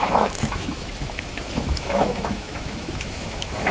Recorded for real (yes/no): no